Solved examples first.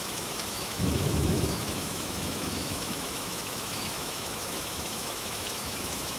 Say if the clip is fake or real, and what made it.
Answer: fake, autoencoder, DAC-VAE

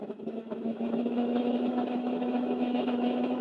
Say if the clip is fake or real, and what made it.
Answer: fake, autoencoder, DAC-VAE